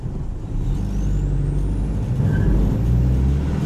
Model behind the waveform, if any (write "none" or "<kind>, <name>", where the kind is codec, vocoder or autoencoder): none